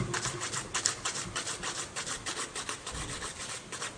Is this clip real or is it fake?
real